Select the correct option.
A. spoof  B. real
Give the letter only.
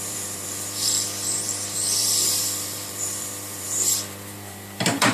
A